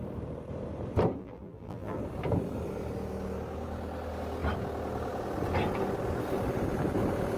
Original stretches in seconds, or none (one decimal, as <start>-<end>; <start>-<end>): 0.0-1.2; 2.0-7.4